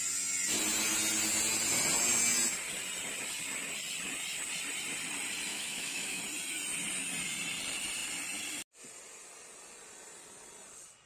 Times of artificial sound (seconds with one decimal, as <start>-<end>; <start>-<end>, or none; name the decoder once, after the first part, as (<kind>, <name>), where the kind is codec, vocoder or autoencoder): 5.5-6.2 (autoencoder, DAC-VAE)